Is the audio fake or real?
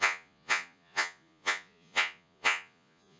fake